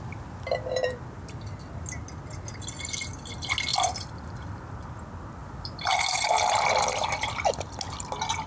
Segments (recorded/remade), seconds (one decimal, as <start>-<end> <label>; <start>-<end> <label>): 0.0-3.7 recorded; 3.7-4.6 remade; 4.6-5.4 recorded; 5.4-5.9 remade; 5.9-8.5 recorded